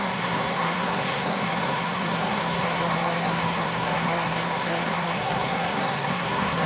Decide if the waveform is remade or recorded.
remade